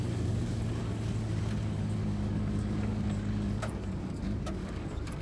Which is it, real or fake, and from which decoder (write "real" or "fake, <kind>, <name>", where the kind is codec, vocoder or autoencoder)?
fake, codec, DAC